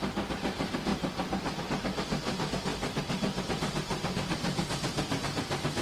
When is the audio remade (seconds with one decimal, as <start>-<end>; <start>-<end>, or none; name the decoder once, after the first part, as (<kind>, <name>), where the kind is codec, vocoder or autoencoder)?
none